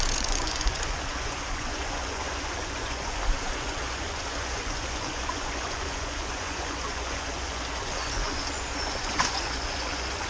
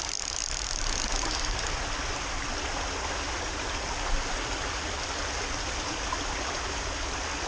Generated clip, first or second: first